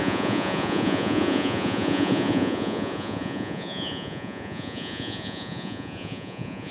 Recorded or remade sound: remade